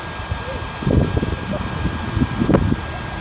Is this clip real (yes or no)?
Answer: yes